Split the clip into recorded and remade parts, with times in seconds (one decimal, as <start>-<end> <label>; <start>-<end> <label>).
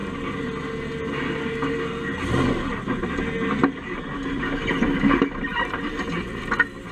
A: 0.0-3.6 recorded; 3.6-4.3 remade; 4.3-5.5 recorded; 5.5-6.1 remade; 6.1-6.9 recorded